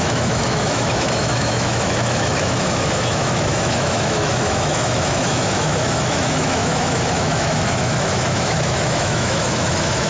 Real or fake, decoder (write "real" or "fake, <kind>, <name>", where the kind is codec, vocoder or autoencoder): fake, autoencoder, DAC-VAE